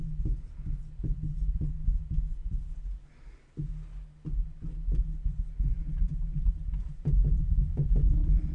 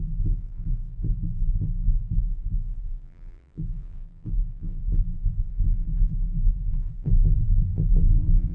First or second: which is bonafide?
first